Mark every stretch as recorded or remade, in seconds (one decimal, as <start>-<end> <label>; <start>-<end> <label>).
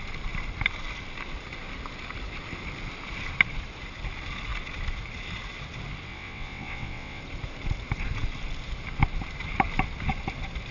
0.0-6.1 recorded; 6.1-7.2 remade; 7.2-10.7 recorded